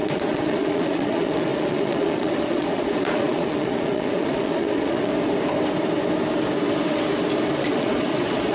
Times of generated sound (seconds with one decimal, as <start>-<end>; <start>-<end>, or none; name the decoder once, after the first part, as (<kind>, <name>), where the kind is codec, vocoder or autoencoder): 0.0-5.1 (vocoder, Vocos); 7.6-8.5